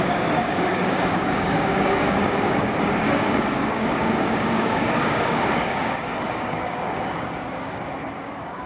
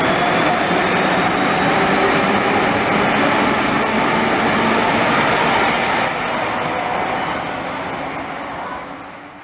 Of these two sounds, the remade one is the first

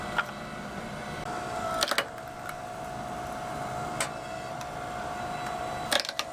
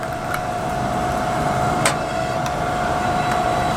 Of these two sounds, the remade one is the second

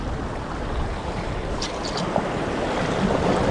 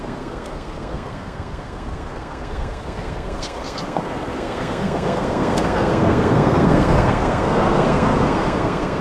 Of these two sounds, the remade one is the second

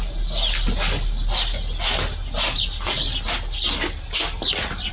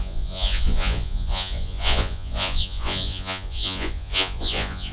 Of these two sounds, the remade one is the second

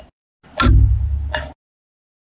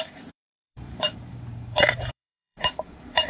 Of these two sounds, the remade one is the second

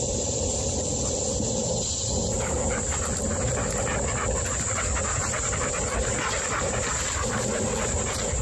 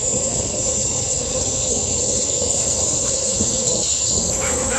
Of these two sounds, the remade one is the second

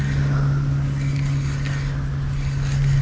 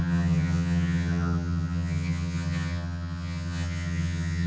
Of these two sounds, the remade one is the second